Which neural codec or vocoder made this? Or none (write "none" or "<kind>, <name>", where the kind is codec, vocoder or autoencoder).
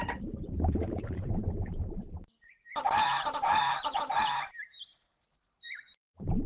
vocoder, BigVGAN v2